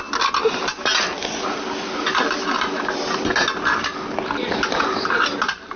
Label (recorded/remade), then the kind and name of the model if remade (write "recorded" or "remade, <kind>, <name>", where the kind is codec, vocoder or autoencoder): recorded